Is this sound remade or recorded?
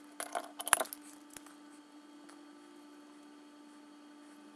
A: recorded